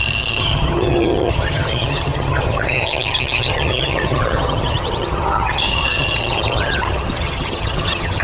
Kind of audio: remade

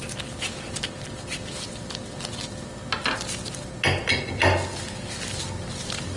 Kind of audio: recorded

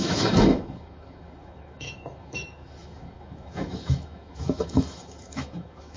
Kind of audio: remade